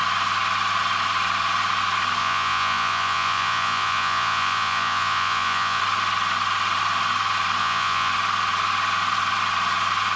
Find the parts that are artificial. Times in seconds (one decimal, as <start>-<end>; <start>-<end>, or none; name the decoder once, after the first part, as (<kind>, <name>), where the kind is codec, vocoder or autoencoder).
2.2-5.8 (vocoder, Vocos); 7.6-8.1